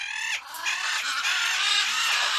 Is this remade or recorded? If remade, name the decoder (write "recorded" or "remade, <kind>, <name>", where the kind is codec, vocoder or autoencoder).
recorded